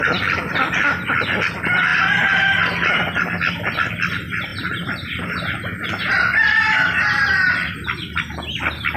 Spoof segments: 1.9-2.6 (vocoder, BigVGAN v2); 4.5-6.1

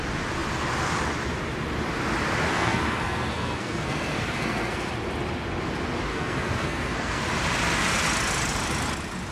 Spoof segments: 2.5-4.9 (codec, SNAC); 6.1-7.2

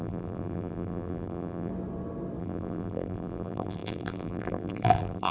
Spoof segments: 0.0-1.7 (vocoder, BigVGAN v2); 2.4-5.3

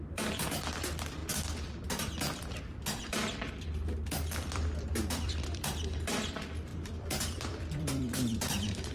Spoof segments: 0.0-1.2 (vocoder, BigVGAN v2); 3.5-8.9

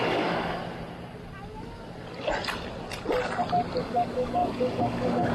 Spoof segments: 0.0-0.6 (codec, DAC); 3.8-5.3

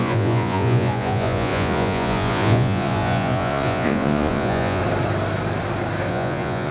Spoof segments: 0.0-4.8 (vocoder, Vocos); 6.1-6.7

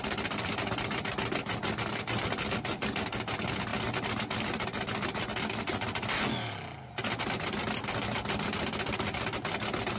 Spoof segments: none